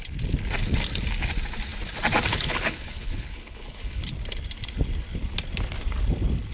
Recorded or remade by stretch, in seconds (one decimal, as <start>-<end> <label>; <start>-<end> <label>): 0.0-2.3 recorded; 2.3-4.1 remade; 4.1-6.5 recorded